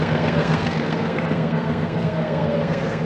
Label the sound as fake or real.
fake